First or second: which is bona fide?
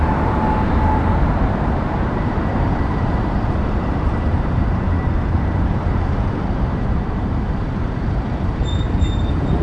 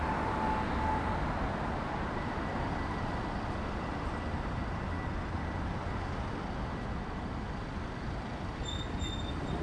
second